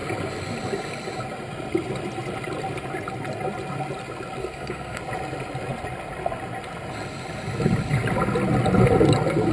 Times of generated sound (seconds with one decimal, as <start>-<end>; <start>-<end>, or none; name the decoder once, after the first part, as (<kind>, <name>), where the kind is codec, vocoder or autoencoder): 4.4-5.0 (codec, SNAC)

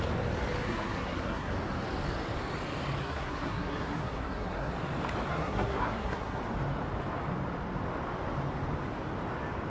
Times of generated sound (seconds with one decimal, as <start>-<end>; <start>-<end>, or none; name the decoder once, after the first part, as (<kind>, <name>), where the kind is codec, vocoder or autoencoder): 0.6-1.5 (codec, SNAC); 3.0-4.7; 5.3-6.4

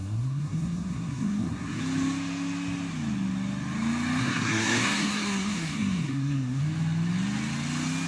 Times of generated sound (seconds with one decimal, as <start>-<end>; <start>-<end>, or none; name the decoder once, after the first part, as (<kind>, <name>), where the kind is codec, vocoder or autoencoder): 0.0-1.8 (codec, SNAC); 4.2-6.6